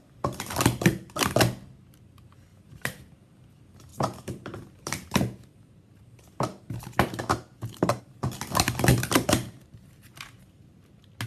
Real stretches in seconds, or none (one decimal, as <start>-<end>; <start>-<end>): 0.0-2.5; 3.1-3.9; 8.0-8.9; 10.9-11.3